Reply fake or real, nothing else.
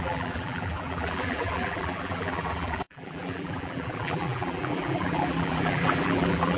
fake